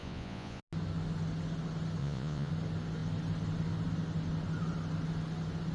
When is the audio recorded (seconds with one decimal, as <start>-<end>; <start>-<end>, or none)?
0.6-2.0; 2.5-5.7